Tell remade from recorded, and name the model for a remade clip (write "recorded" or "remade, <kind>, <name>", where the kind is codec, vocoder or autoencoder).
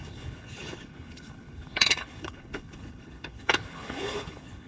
remade, codec, HILCodec